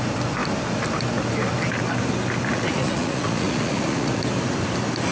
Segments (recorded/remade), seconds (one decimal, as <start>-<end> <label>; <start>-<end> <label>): 0.0-2.5 recorded; 2.5-4.2 remade; 4.2-5.1 recorded